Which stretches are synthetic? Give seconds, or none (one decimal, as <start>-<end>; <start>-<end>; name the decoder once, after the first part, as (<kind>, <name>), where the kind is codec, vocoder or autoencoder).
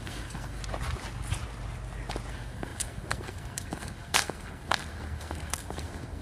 0.0-0.6 (codec, SNAC); 2.3-6.2